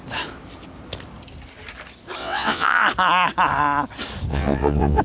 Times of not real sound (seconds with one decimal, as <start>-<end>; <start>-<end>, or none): 2.2-2.8; 4.3-5.0